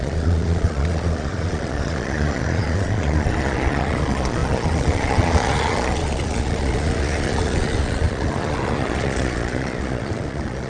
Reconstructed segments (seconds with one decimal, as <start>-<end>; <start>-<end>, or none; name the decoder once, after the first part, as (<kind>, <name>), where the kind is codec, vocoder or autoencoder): 0.0-10.7 (vocoder, Vocos)